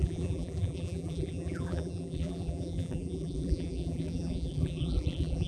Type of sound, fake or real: fake